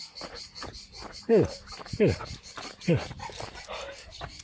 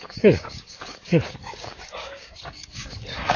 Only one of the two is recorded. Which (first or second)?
first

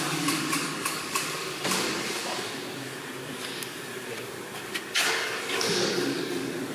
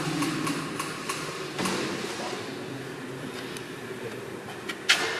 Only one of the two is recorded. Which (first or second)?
second